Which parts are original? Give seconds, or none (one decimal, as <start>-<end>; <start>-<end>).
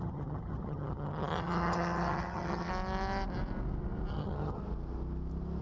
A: 2.7-4.1; 4.6-5.6